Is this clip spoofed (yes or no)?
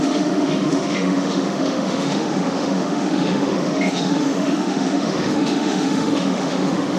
yes